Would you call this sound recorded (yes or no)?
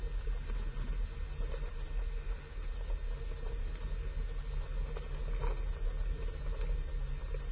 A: yes